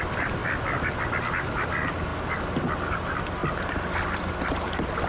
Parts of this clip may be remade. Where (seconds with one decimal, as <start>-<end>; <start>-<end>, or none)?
0.0-2.1; 2.9-3.4; 4.4-5.1